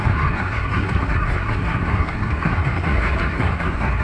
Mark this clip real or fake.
fake